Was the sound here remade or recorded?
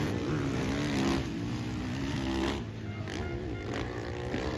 recorded